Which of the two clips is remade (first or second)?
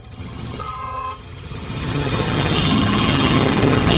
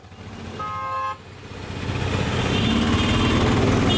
first